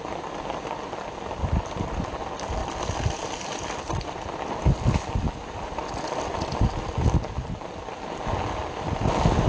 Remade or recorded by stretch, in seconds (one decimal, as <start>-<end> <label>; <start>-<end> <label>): 0.0-9.5 recorded